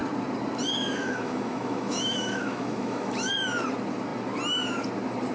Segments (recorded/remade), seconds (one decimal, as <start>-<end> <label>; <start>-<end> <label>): 0.0-1.0 recorded; 1.0-3.3 remade; 3.3-5.3 recorded